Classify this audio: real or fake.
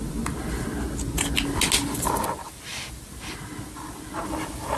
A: real